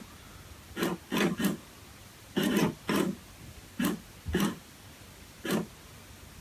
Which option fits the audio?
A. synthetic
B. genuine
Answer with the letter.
B